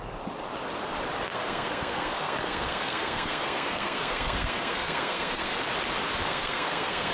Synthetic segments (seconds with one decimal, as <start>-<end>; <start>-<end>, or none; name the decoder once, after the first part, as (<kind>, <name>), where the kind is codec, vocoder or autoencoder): 1.3-5.6 (codec, SNAC); 6.3-7.1